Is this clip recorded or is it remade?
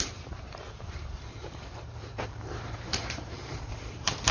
remade